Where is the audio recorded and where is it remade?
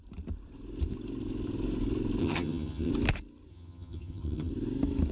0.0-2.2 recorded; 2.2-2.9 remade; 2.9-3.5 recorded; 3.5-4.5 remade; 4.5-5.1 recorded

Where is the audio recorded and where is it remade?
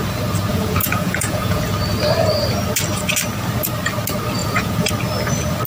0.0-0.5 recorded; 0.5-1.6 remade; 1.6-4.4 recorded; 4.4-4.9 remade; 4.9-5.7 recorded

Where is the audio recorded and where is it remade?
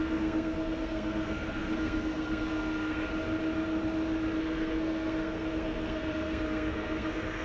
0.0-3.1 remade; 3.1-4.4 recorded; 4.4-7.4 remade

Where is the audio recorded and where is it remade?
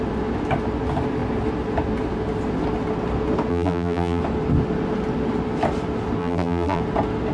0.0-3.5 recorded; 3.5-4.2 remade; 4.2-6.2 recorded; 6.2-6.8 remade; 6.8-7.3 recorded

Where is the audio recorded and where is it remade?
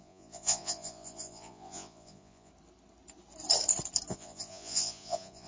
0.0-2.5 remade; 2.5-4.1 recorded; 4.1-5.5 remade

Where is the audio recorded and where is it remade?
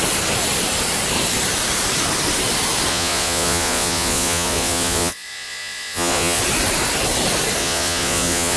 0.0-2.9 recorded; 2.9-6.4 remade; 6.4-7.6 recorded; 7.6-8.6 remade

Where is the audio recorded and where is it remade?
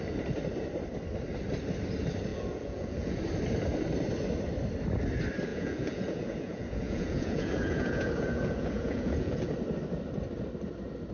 0.0-2.3 recorded; 2.3-3.2 remade; 3.2-5.5 recorded; 5.5-9.5 remade; 9.5-11.1 recorded